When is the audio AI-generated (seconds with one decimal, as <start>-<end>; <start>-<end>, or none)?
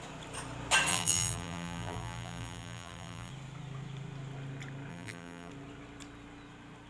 0.9-3.3; 4.9-5.5